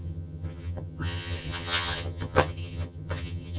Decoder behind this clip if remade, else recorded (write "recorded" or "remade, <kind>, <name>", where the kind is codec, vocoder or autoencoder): remade, vocoder, HiFi-GAN